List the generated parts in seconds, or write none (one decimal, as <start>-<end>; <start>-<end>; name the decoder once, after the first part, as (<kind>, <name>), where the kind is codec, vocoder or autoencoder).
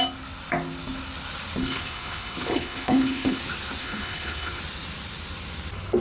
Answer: 1.6-3.4 (codec, HILCodec); 3.8-4.6